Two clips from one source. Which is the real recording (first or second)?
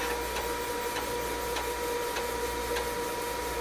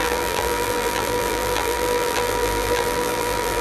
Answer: first